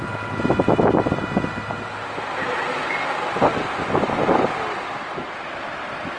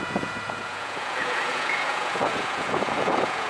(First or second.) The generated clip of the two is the second